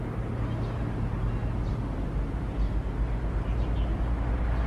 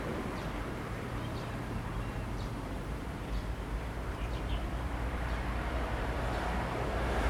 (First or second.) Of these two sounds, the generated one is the second